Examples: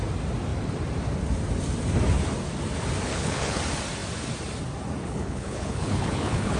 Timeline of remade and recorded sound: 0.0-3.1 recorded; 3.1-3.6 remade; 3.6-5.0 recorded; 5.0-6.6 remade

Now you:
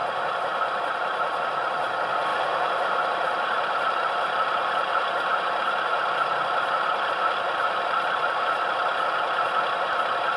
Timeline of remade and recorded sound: 0.0-1.4 remade; 1.4-2.3 recorded; 2.3-7.1 remade; 7.1-10.4 recorded

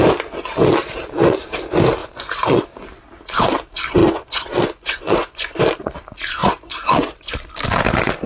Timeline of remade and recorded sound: 0.0-2.0 recorded; 2.0-2.6 remade; 2.6-4.0 recorded; 4.0-5.6 remade; 5.6-6.4 recorded; 6.4-7.3 remade; 7.3-8.3 recorded

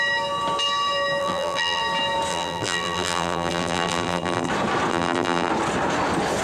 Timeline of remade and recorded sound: 0.0-1.2 recorded; 1.2-1.8 remade; 1.8-2.3 recorded; 2.3-4.5 remade; 4.5-4.9 recorded; 4.9-5.5 remade; 5.5-6.4 recorded